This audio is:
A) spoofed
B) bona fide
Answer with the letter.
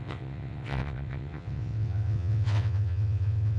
A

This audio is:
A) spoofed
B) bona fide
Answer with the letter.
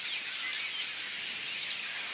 B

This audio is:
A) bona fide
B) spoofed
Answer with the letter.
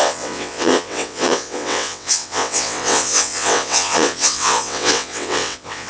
B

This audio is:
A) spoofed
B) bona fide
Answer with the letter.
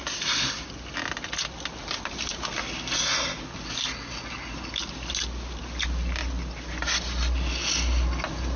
B